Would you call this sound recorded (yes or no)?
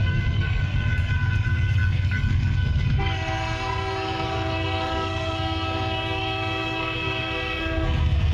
no